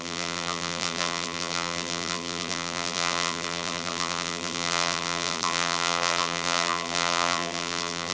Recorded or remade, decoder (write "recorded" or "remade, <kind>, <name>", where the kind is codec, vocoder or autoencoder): remade, vocoder, BigVGAN v2